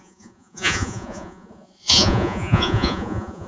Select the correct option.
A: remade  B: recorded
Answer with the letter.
A